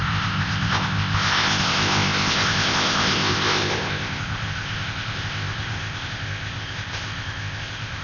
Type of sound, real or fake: fake